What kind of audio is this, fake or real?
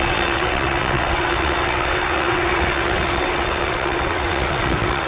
fake